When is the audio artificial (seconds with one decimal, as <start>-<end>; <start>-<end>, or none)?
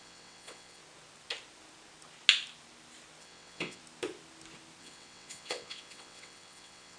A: 0.0-0.8; 3.2-3.8; 4.8-7.0